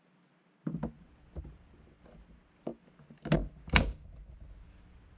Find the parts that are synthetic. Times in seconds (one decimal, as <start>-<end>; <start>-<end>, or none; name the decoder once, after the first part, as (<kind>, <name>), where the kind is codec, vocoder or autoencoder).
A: none